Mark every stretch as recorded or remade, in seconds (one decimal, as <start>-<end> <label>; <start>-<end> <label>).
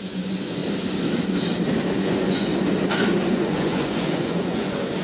0.0-0.6 remade; 0.6-1.9 recorded; 1.9-2.5 remade; 2.5-3.3 recorded; 3.3-5.0 remade